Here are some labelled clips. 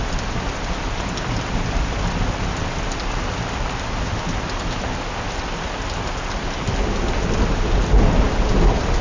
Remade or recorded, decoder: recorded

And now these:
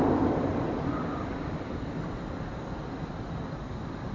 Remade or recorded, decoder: remade, vocoder, BigVGAN v2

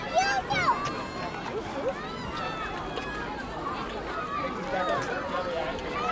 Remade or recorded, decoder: recorded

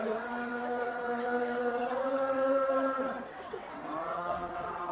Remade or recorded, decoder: remade, vocoder, WaveNeXt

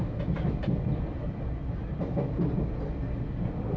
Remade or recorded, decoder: recorded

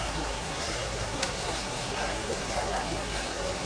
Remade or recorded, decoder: remade, codec, SNAC